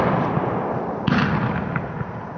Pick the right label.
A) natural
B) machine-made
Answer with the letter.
A